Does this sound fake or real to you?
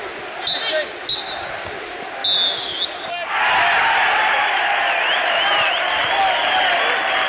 real